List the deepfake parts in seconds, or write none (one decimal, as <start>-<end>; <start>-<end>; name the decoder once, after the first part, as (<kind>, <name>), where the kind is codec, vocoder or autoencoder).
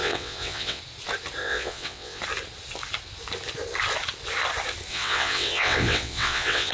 0.0-0.8 (vocoder, WaveNeXt); 1.4-2.2; 4.9-6.7